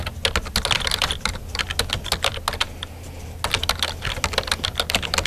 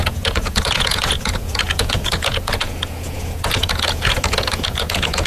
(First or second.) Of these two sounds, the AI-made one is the second